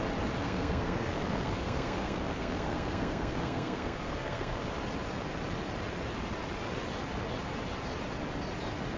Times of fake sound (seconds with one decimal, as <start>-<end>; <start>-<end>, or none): 0.4-4.6